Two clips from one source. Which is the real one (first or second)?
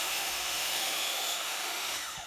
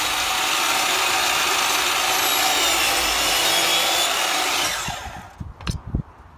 second